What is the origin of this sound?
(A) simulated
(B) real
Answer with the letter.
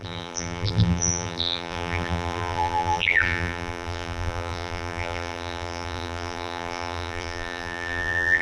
A